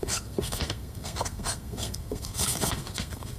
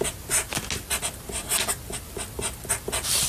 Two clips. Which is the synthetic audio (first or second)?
first